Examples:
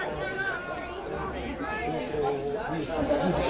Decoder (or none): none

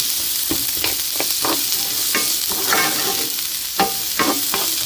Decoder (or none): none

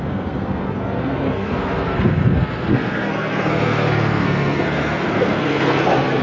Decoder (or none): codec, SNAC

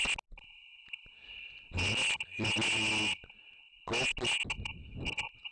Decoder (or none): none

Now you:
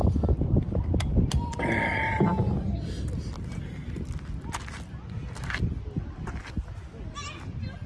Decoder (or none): none